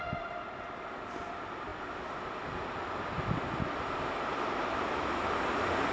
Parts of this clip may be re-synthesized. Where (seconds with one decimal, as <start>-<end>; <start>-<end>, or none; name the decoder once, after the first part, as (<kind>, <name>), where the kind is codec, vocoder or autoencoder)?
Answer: none